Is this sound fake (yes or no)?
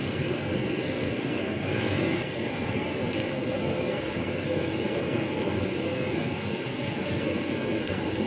yes